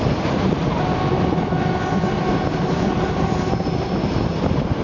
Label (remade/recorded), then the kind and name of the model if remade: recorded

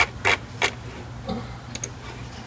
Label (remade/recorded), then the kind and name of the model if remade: recorded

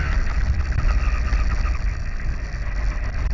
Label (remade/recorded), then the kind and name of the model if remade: recorded